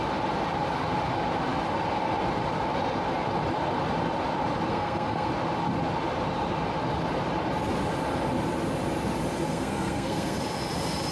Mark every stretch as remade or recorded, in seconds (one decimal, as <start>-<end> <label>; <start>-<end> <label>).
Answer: 0.0-4.7 recorded; 4.7-5.3 remade; 5.3-9.5 recorded; 9.5-10.4 remade; 10.4-11.1 recorded